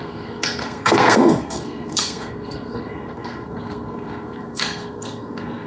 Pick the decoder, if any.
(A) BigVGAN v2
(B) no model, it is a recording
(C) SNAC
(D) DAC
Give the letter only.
C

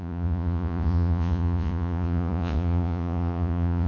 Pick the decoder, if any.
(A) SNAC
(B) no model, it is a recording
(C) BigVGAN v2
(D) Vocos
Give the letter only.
D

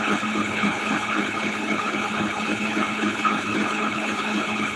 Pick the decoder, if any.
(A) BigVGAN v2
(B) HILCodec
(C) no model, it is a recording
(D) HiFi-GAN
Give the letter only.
B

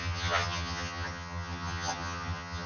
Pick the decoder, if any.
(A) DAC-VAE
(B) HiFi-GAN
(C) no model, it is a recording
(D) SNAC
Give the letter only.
B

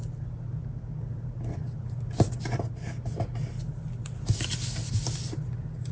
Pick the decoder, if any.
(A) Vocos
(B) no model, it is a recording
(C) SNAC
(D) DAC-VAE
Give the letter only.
B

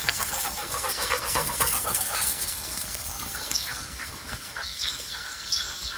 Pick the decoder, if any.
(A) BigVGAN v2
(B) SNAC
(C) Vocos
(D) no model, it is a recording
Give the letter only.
B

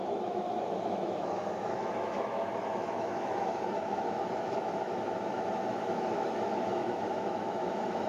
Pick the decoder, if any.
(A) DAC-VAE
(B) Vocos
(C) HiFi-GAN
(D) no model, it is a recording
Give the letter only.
A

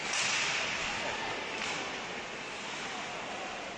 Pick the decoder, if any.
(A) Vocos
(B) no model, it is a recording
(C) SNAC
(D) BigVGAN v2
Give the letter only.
B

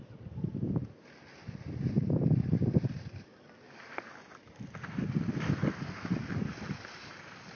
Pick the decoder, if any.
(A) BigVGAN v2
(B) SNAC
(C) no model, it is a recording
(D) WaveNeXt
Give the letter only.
A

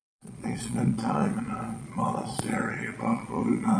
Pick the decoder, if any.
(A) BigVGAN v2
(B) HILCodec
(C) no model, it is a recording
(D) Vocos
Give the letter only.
D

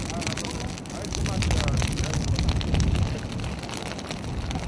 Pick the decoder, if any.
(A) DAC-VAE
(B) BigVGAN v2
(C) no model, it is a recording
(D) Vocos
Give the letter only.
C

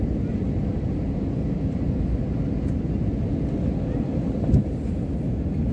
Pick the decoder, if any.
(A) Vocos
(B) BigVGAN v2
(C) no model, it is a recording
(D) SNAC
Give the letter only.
C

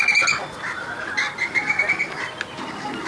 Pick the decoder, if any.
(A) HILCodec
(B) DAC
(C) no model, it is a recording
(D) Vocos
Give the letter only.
C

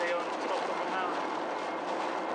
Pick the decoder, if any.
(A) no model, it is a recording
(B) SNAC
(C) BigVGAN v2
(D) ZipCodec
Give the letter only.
A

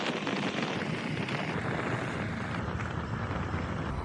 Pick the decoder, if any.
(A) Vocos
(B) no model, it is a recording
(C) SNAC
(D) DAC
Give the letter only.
B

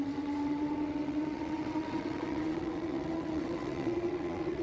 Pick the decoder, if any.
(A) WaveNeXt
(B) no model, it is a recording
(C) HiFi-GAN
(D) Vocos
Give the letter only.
A